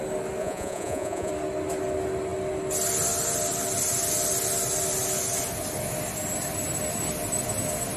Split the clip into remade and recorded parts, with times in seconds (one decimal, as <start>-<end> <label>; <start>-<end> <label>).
0.0-0.4 recorded; 0.4-1.3 remade; 1.3-8.0 recorded